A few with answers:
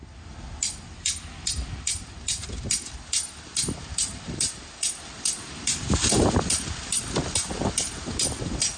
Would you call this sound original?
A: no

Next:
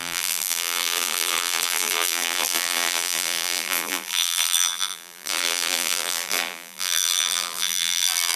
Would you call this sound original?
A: no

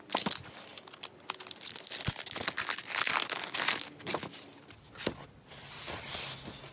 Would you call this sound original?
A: yes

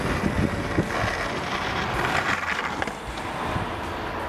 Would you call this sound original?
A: yes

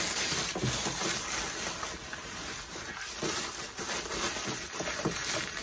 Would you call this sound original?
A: yes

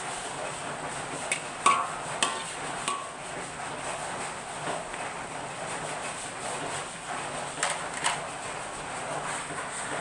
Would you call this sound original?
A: yes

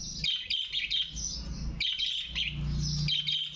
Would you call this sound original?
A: yes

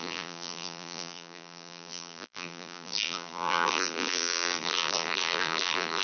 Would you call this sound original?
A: no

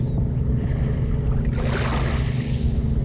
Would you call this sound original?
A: yes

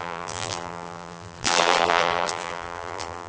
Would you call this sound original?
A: no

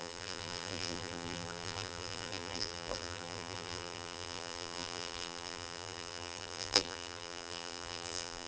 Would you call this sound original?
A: no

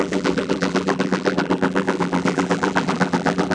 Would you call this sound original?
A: no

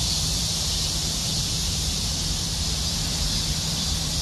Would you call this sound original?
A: no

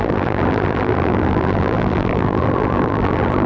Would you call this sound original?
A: no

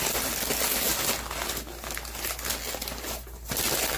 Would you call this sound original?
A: yes